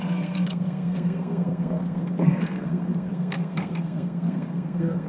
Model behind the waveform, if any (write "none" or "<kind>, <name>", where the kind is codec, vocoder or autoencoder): codec, SNAC